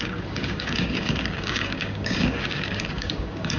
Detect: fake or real fake